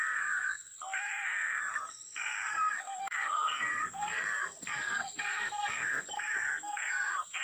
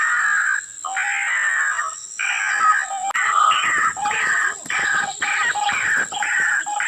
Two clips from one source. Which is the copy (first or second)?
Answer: first